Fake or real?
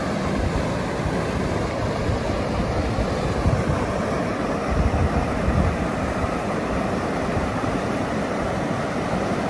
real